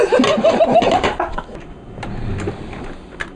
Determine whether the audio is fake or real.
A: real